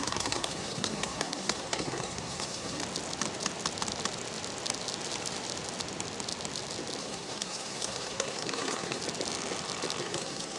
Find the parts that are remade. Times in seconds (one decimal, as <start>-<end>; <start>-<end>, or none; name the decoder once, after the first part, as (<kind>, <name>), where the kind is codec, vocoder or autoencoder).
0.0-2.8 (codec, SNAC); 7.0-9.0; 10.0-10.6